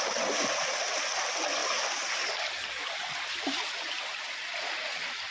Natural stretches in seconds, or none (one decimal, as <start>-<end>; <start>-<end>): 0.0-5.3